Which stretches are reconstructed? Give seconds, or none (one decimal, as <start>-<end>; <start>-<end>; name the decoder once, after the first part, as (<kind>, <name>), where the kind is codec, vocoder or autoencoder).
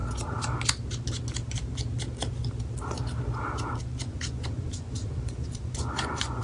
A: 3.8-6.4 (vocoder, Vocos)